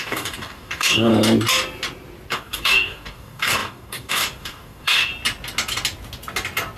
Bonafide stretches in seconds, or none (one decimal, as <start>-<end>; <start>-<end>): 1.1-2.3; 5.1-6.8